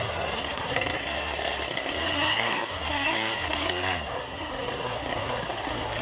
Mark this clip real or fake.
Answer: fake